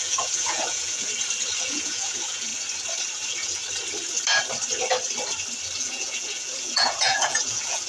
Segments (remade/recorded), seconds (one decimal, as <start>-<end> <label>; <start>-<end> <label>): 0.0-1.1 remade; 1.1-1.6 recorded; 1.6-2.5 remade; 2.5-3.1 recorded; 3.1-3.6 remade; 3.6-5.8 recorded; 5.8-7.9 remade